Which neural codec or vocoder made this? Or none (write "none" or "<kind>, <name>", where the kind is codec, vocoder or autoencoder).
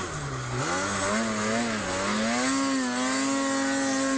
none